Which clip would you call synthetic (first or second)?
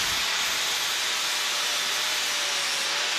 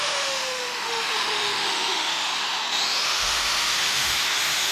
second